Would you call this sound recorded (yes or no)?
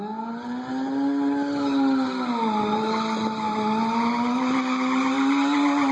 yes